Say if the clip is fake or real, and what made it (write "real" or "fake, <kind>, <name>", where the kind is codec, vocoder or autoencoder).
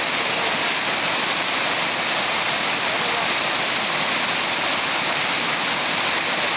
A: real